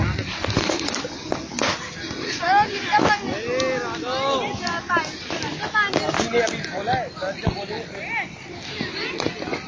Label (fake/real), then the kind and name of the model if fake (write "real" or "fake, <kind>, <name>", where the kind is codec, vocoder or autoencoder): real